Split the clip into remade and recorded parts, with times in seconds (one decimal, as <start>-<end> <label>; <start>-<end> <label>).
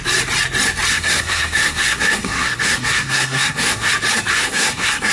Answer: 0.0-0.9 recorded; 0.9-3.9 remade; 3.9-4.3 recorded; 4.3-5.1 remade